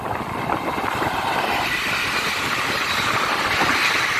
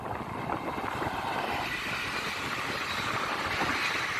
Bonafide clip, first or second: second